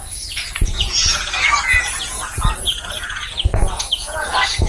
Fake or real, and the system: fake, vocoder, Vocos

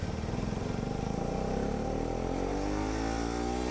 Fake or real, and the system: real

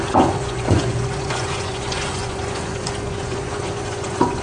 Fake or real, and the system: fake, vocoder, Vocos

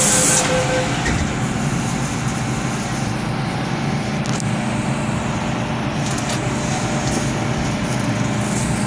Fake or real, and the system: real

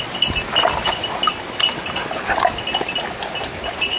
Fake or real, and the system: real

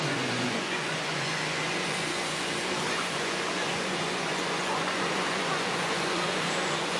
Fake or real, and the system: fake, vocoder, Vocos